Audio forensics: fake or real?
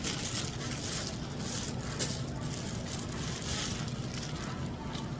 real